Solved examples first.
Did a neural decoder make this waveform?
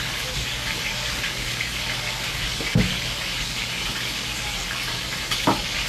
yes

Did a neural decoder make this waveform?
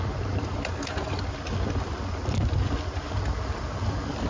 no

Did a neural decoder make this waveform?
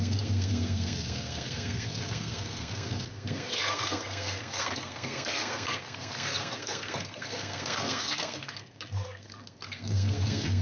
yes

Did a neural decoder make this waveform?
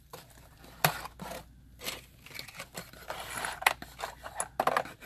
no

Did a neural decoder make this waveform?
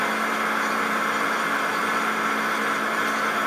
no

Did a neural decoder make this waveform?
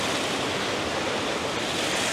no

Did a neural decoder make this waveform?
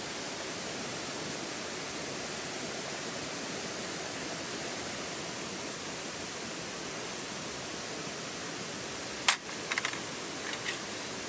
no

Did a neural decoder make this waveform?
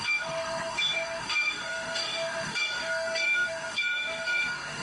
yes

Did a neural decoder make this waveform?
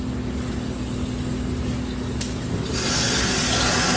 no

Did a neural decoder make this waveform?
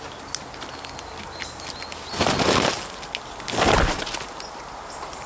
no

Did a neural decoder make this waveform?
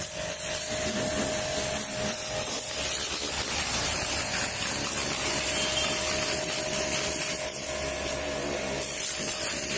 no